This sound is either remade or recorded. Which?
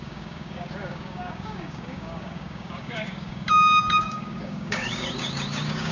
remade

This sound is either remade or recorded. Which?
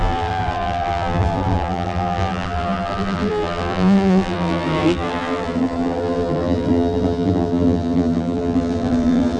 remade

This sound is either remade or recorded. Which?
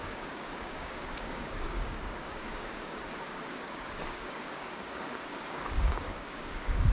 remade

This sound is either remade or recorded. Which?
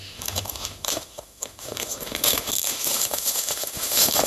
remade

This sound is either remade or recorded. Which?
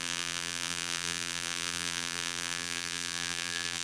remade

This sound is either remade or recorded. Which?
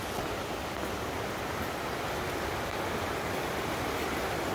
recorded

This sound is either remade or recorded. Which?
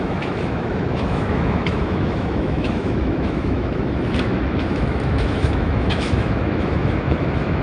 remade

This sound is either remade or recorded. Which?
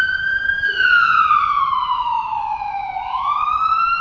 remade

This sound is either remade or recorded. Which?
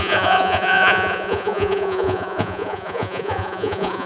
remade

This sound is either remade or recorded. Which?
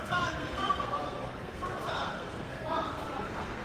remade